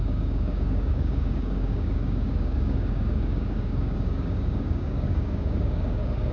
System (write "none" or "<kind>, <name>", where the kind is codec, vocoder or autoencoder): codec, DAC